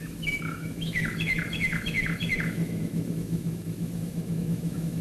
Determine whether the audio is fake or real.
fake